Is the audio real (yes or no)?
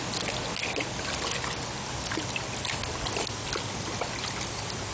yes